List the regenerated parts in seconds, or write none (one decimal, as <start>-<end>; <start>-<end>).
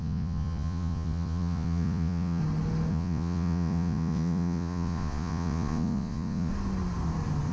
0.0-2.4; 2.9-6.5